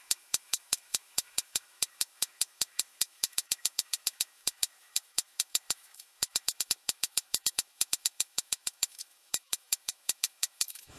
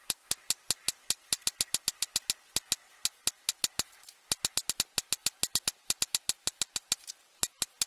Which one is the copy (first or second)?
first